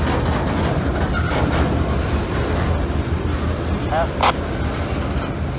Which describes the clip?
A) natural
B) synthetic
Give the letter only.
A